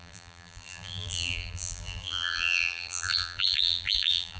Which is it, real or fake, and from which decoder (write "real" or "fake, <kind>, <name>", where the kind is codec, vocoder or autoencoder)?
fake, vocoder, BigVGAN v2